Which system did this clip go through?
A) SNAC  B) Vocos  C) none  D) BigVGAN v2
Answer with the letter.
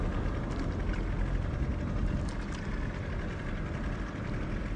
C